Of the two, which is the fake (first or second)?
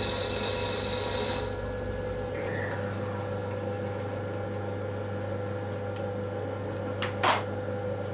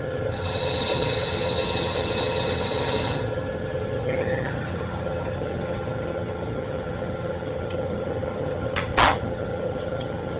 second